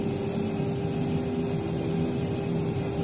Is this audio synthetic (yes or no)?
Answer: no